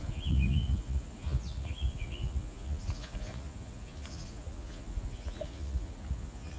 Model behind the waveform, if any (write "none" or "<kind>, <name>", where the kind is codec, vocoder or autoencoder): vocoder, Vocos